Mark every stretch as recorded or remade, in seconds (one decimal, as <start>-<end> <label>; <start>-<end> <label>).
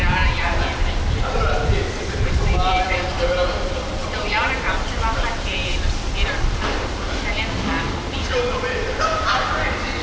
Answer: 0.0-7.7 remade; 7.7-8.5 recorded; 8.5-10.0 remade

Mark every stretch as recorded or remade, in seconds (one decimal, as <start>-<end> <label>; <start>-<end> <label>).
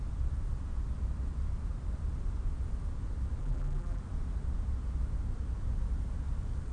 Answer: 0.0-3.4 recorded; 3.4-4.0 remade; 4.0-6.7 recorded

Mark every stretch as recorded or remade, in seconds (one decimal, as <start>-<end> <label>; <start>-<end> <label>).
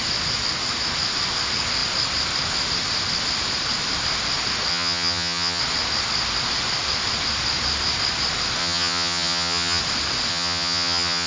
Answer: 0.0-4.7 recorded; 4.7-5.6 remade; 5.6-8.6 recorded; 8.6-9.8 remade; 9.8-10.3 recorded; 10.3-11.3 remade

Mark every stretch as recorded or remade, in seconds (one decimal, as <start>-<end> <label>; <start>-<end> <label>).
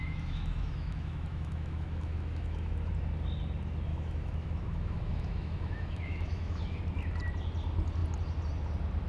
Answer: 0.0-2.9 remade; 2.9-3.9 recorded; 3.9-6.8 remade; 6.8-9.1 recorded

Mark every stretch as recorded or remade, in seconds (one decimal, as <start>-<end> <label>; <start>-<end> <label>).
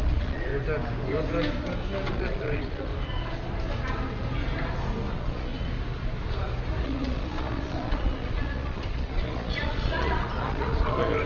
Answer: 0.0-0.5 remade; 0.5-2.1 recorded; 2.1-2.9 remade; 2.9-5.1 recorded; 5.1-5.5 remade; 5.5-6.8 recorded; 6.8-11.3 remade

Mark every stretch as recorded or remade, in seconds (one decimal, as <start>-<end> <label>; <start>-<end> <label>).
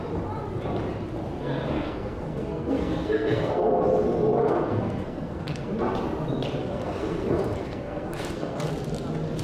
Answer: 0.0-1.4 recorded; 1.4-3.8 remade; 3.8-4.4 recorded; 4.4-5.7 remade; 5.7-6.6 recorded; 6.6-8.7 remade; 8.7-9.4 recorded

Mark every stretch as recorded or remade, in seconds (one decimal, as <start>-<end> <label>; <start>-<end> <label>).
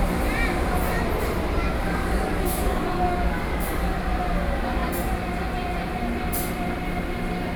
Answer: 0.0-1.7 recorded; 1.7-3.9 remade; 3.9-7.6 recorded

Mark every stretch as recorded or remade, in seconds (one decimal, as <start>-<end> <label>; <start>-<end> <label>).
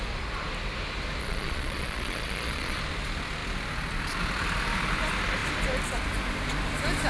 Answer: 0.0-1.2 recorded; 1.2-2.8 remade; 2.8-7.1 recorded